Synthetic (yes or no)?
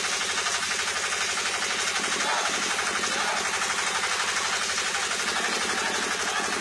no